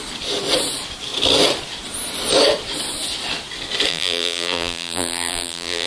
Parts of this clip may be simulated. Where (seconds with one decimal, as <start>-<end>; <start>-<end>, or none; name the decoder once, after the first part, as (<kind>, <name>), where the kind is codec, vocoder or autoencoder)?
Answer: 3.9-5.9 (vocoder, BigVGAN v2)